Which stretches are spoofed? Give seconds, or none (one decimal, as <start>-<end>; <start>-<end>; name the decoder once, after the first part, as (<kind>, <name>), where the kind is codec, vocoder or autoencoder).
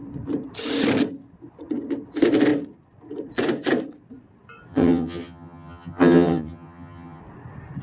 4.7-7.2 (vocoder, HiFi-GAN)